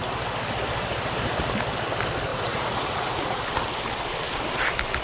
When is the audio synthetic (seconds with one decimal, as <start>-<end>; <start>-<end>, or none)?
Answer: 2.3-3.4